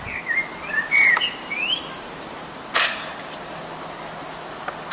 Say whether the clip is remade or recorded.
recorded